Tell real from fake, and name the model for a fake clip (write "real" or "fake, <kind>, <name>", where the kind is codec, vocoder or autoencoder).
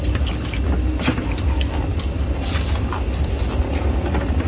real